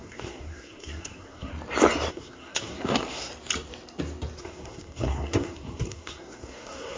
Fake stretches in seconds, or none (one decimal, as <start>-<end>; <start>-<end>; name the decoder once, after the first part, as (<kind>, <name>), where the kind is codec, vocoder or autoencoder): 0.0-1.5 (codec, SNAC); 2.1-3.3; 4.4-7.0

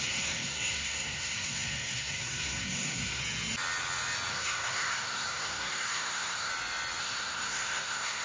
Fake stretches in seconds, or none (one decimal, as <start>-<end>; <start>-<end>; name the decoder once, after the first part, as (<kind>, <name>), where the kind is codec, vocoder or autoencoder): 0.0-3.2 (codec, SNAC); 4.3-6.5; 7.0-8.2

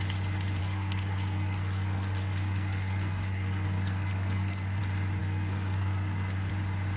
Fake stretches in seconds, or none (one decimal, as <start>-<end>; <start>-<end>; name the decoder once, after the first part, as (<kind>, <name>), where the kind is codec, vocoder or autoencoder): 0.6-4.8 (codec, SNAC); 5.2-6.5

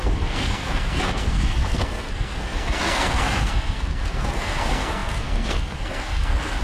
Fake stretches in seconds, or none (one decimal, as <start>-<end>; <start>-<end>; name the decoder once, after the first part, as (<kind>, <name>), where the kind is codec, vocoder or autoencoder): 0.0-6.6 (codec, SNAC)

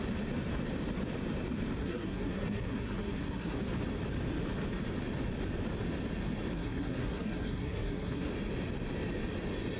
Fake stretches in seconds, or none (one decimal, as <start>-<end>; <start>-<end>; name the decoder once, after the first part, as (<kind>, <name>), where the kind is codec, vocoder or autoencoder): 1.8-3.6 (codec, SNAC); 6.5-8.3